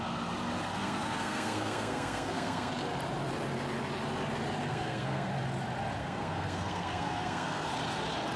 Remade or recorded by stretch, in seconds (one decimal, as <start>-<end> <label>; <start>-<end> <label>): 0.0-0.8 recorded; 0.8-2.7 remade; 2.7-4.7 recorded; 4.7-5.3 remade; 5.3-6.0 recorded; 6.0-7.7 remade; 7.7-8.4 recorded